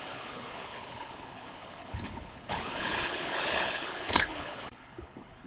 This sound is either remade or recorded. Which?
remade